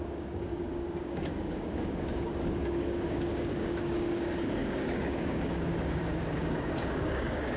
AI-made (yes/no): yes